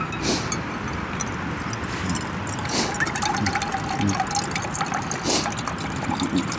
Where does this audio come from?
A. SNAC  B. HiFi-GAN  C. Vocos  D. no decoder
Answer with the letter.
D